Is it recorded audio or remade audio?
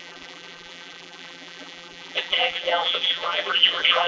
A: remade